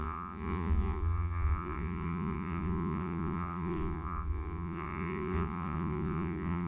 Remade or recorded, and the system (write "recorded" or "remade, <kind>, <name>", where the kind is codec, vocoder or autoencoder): remade, vocoder, Vocos